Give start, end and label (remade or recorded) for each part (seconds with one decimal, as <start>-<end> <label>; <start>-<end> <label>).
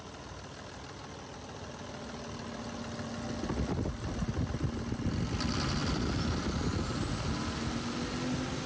0.0-8.7 recorded